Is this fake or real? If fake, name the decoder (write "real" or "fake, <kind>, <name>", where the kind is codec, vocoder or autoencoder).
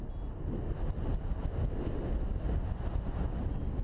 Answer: real